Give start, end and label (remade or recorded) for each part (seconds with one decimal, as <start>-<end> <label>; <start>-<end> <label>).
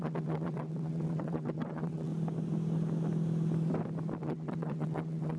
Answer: 0.0-2.1 remade; 2.1-4.2 recorded; 4.2-5.4 remade